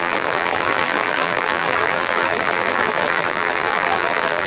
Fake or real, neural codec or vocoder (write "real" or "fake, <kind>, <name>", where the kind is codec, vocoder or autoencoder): fake, vocoder, BigVGAN v2